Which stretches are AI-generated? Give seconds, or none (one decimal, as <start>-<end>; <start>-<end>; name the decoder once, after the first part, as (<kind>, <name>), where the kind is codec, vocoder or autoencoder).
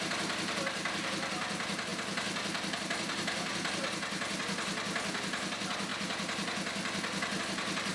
none